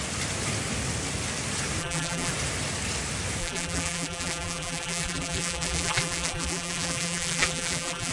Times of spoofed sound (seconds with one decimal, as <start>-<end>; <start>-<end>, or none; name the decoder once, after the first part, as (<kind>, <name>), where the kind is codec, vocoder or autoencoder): 1.8-2.3 (vocoder, BigVGAN v2); 3.4-8.1